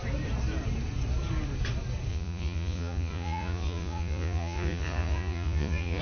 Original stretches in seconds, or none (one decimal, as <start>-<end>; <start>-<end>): 0.0-2.1